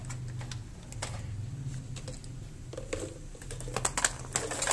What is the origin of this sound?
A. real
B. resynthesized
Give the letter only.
A